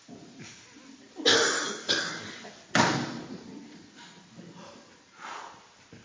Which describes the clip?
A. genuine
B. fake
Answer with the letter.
A